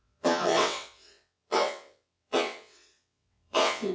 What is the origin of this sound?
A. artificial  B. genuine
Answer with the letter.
A